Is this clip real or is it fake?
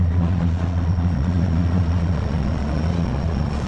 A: fake